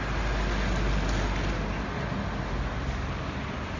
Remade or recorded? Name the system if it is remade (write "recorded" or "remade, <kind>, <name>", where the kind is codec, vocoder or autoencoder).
recorded